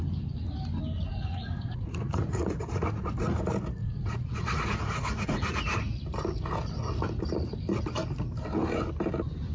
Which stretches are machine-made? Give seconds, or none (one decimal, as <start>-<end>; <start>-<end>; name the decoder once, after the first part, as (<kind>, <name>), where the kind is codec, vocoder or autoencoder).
1.1-3.4 (vocoder, Vocos); 3.8-5.6